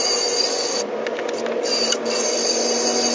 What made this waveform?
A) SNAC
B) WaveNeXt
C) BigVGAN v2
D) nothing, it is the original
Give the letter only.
D